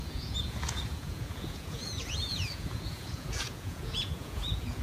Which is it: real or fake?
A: fake